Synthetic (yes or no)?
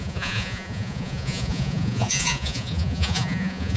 yes